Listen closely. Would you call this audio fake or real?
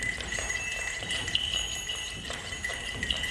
fake